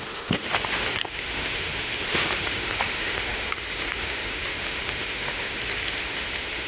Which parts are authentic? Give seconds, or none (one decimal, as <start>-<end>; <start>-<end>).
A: none